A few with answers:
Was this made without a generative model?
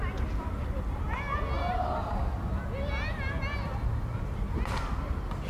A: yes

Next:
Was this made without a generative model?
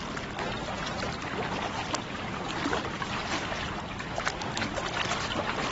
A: yes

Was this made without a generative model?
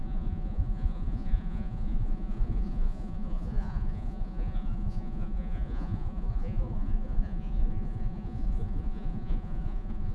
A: no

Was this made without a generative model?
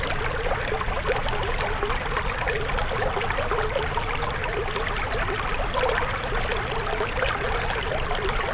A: yes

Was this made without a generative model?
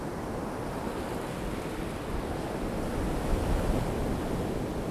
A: yes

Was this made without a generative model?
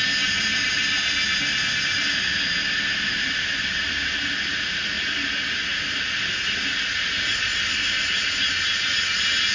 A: yes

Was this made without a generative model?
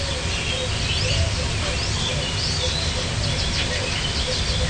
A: yes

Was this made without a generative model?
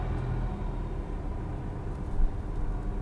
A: yes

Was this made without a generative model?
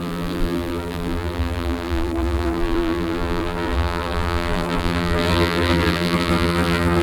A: no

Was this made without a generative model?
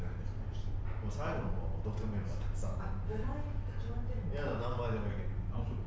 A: yes